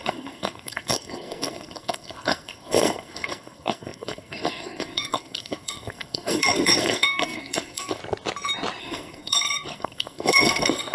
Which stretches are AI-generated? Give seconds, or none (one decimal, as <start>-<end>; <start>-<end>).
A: 0.0-8.0; 8.8-10.9